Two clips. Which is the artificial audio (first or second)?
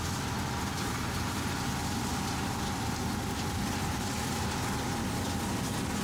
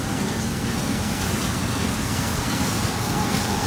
second